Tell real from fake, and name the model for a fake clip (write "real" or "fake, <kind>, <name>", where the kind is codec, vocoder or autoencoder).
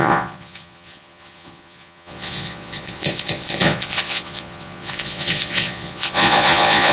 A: fake, vocoder, Vocos